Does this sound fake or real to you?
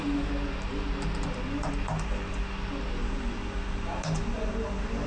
real